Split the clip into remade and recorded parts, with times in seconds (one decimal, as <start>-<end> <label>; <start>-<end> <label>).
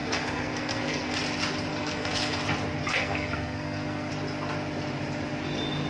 0.0-1.2 remade; 1.2-1.7 recorded; 1.7-2.4 remade; 2.4-2.9 recorded; 2.9-4.1 remade; 4.1-5.9 recorded